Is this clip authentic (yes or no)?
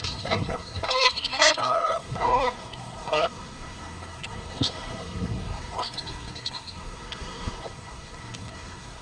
no